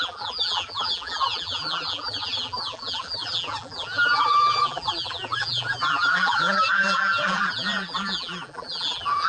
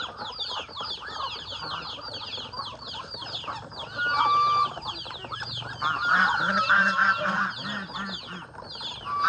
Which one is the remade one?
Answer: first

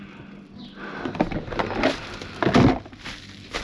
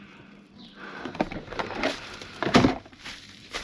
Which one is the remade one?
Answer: second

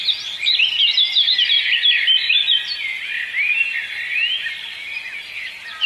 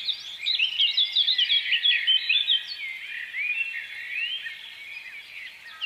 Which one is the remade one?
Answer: first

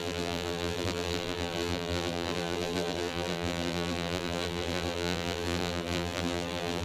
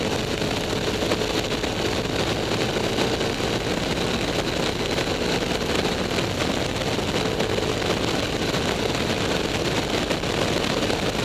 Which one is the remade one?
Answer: first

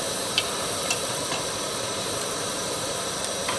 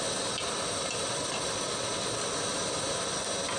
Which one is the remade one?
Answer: first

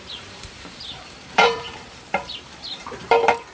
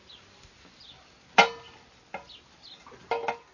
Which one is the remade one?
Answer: first